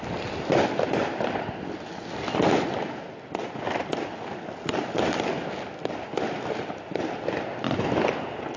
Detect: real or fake real